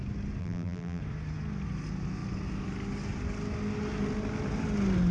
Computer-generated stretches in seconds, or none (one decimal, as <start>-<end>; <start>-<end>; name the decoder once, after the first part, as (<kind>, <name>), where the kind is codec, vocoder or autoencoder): 0.4-1.0 (vocoder, BigVGAN v2)